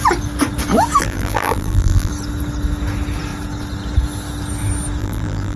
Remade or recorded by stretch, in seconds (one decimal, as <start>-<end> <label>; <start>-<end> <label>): 0.0-1.0 recorded; 1.0-2.1 remade; 2.1-5.0 recorded; 5.0-5.6 remade